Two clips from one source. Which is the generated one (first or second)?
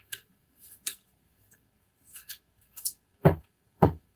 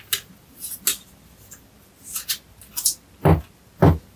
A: first